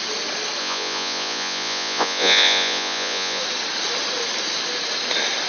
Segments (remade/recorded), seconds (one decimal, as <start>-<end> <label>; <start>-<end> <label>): 0.0-0.6 recorded; 0.6-3.4 remade; 3.4-5.5 recorded

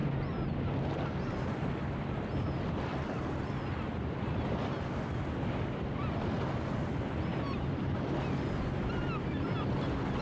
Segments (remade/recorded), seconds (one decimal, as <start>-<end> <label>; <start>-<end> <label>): 0.0-10.2 recorded

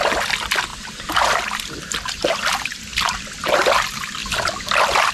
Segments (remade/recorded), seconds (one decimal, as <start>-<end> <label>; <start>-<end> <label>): 0.0-0.7 recorded; 0.7-2.2 remade; 2.2-2.9 recorded; 2.9-3.5 remade; 3.5-4.2 recorded; 4.2-5.1 remade